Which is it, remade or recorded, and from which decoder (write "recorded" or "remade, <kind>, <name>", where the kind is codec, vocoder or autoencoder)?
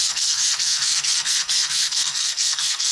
remade, codec, SNAC